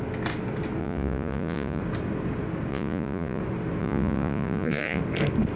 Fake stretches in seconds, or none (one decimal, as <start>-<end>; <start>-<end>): 0.8-1.8; 2.7-3.4; 3.8-5.0